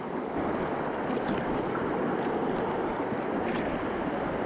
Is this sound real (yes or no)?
yes